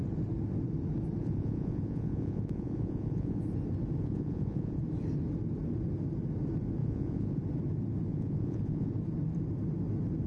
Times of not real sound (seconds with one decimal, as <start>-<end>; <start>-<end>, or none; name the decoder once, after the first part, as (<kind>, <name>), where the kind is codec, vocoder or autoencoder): 1.2-3.4 (vocoder, Vocos); 4.0-4.8; 6.8-7.4; 8.1-8.9